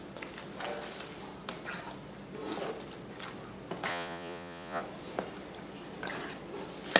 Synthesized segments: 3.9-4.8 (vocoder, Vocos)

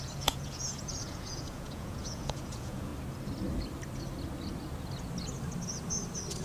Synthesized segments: 0.0-2.9 (vocoder, Vocos)

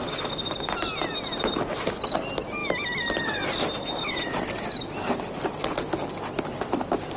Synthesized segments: none